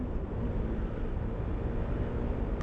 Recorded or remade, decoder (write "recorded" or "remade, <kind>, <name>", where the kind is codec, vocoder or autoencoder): recorded